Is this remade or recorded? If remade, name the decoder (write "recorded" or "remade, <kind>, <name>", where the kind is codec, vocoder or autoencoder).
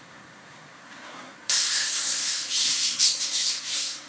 remade, codec, SNAC